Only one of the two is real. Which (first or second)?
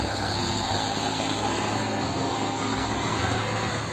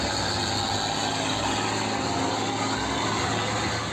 second